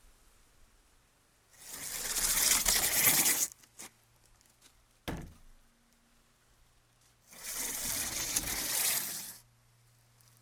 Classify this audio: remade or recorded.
recorded